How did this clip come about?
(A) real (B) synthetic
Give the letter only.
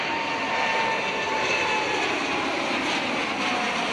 A